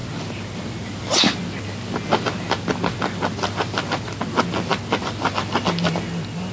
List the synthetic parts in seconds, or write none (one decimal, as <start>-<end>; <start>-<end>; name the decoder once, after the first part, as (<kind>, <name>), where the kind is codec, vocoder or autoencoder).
none